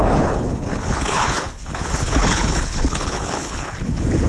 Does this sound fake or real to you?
fake